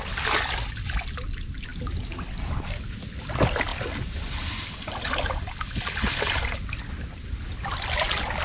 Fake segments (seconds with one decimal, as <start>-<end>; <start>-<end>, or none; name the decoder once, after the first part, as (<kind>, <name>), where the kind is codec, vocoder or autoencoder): none